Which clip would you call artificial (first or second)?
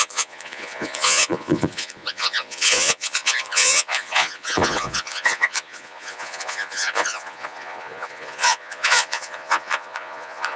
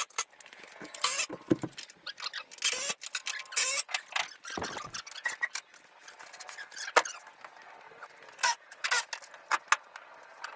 first